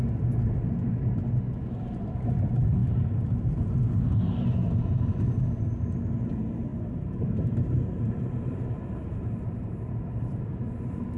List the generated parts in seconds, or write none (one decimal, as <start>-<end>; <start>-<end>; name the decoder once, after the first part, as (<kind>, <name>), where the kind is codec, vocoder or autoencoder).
2.8-3.7 (vocoder, BigVGAN v2); 6.7-11.2